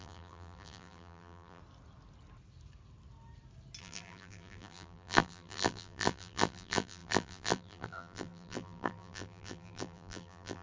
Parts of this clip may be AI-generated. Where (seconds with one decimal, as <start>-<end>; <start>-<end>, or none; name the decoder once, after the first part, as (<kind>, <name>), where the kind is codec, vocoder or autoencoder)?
0.0-1.6 (vocoder, BigVGAN v2); 3.8-10.6

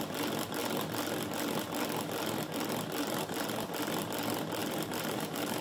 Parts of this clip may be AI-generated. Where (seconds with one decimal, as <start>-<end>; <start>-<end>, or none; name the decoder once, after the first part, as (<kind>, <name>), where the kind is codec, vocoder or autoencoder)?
4.6-5.6 (vocoder, BigVGAN v2)

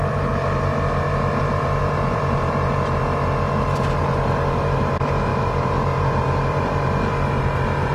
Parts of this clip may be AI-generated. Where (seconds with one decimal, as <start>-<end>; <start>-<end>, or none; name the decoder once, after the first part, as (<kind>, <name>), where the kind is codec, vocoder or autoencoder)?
0.0-0.7 (vocoder, BigVGAN v2); 1.4-3.0; 3.6-4.0; 4.6-7.9